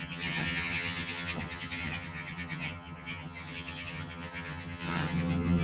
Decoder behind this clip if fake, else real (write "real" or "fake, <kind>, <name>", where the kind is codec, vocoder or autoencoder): fake, vocoder, HiFi-GAN